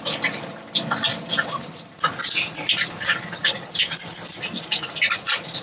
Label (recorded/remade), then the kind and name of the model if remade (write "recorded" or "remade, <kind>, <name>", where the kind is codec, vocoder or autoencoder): recorded